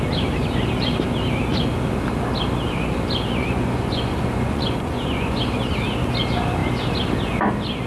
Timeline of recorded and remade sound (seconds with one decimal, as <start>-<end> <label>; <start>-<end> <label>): 0.0-3.4 recorded; 3.4-5.4 remade; 5.4-7.9 recorded